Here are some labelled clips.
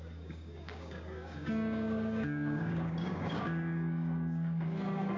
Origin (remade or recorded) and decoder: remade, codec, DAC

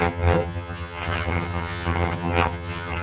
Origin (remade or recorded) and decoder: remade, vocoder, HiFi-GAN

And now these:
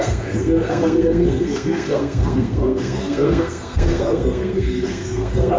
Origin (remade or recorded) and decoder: remade, codec, SNAC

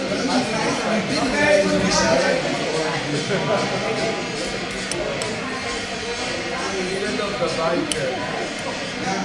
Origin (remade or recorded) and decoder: recorded